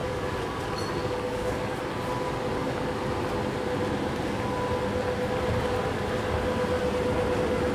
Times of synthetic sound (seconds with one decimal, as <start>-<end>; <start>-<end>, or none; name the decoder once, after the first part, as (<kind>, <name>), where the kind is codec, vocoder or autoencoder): 0.0-0.6 (codec, DAC); 1.0-1.8